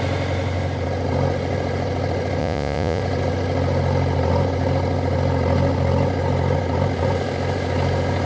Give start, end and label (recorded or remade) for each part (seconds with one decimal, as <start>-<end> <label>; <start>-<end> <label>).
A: 0.0-2.4 recorded; 2.4-3.0 remade; 3.0-8.3 recorded